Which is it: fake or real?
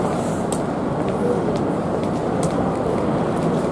real